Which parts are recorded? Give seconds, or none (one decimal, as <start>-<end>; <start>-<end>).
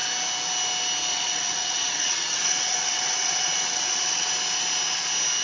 0.0-1.1; 4.3-5.4